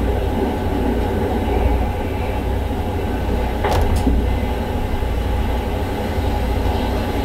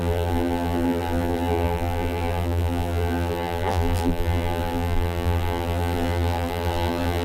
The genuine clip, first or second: first